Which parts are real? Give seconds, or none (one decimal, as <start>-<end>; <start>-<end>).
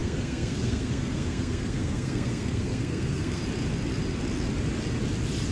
3.4-5.5